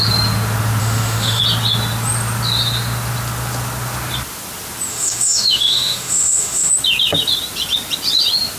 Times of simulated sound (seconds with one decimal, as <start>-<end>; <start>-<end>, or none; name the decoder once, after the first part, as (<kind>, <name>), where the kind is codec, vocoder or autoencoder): 0.8-1.4 (autoencoder, DAC-VAE); 4.9-6.7